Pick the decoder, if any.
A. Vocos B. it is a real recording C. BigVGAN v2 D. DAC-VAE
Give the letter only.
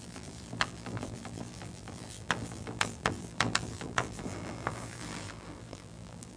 C